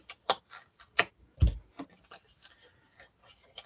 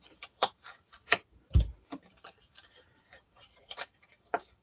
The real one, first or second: first